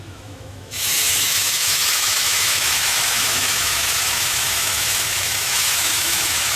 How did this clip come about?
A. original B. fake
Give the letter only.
B